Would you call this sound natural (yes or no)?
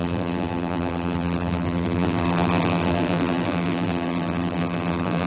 no